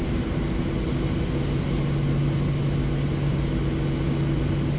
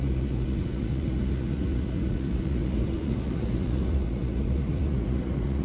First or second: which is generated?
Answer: second